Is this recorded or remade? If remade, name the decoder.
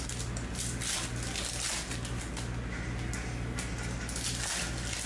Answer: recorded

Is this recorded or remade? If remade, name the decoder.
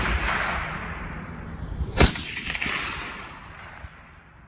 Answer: remade, vocoder, BigVGAN v2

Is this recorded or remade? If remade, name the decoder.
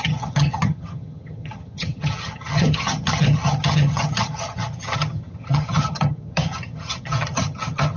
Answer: remade, vocoder, HiFi-GAN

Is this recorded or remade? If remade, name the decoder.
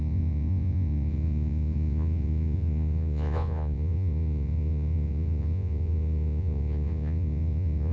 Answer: remade, vocoder, Vocos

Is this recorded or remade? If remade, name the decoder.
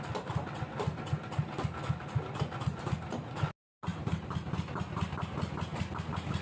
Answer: recorded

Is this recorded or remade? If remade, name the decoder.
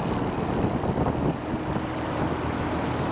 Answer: recorded